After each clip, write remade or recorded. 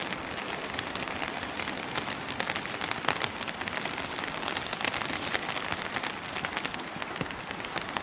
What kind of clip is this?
recorded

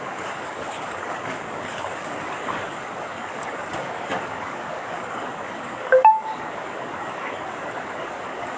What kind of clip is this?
remade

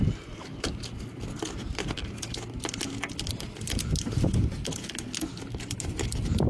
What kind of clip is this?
recorded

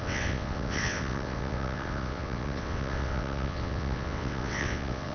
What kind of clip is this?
remade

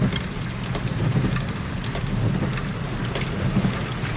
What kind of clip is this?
recorded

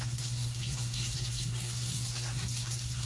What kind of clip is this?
remade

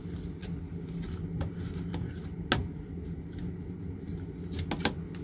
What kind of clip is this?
recorded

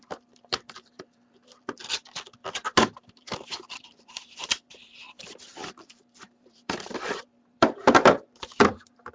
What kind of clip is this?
remade